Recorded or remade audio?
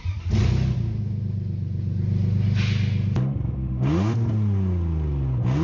recorded